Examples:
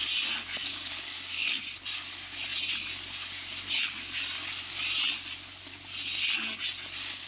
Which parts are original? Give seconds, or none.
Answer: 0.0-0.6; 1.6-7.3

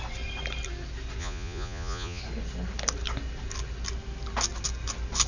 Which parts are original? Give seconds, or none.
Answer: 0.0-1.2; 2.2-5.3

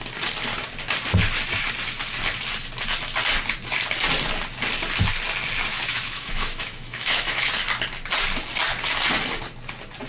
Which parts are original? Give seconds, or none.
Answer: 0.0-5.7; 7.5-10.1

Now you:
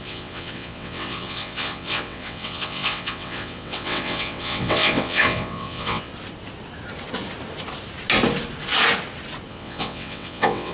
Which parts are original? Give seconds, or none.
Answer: 6.1-9.5

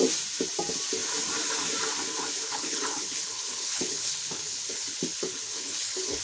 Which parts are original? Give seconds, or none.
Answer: 0.0-2.4

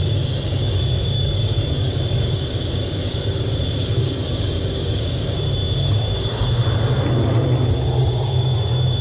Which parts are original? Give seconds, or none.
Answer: 6.6-7.7

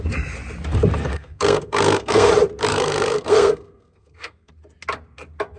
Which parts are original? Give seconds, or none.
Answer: 0.0-1.1; 2.3-2.7; 4.5-5.6

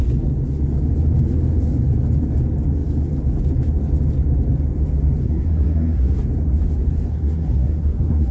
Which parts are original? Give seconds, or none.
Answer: 0.0-5.2; 6.2-7.1